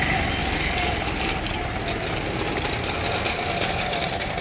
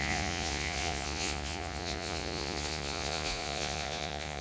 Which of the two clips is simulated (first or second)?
second